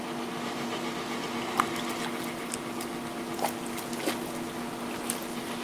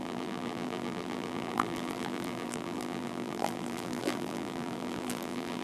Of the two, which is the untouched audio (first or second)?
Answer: first